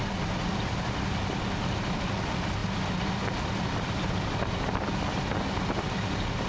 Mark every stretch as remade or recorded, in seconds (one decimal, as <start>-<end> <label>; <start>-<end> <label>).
0.0-6.5 recorded